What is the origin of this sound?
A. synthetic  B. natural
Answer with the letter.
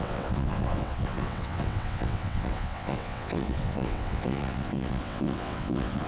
A